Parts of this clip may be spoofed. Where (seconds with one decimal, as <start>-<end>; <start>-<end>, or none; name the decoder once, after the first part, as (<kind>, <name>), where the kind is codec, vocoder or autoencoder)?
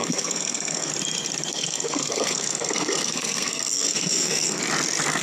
0.0-0.9 (codec, SNAC); 1.5-4.6